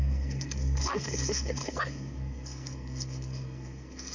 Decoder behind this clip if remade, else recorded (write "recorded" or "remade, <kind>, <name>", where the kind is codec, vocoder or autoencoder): remade, codec, SNAC